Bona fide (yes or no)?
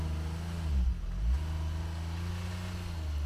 yes